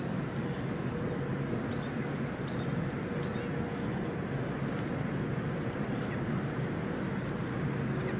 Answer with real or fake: real